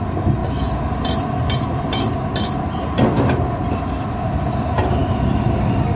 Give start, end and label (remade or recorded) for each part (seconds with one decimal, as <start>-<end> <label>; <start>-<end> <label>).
0.0-6.0 recorded